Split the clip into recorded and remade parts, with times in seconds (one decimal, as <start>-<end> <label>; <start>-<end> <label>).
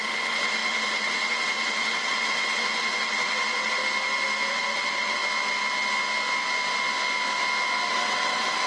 0.0-3.8 remade; 3.8-4.5 recorded; 4.5-5.2 remade; 5.2-7.9 recorded; 7.9-8.7 remade